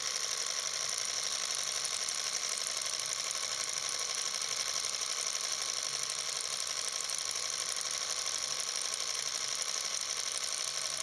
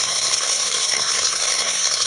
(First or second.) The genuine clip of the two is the first